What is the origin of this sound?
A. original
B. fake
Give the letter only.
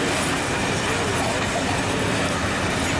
A